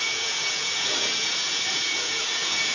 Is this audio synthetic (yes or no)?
yes